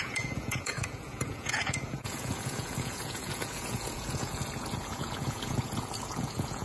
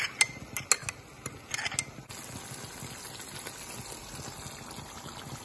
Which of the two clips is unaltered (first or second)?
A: second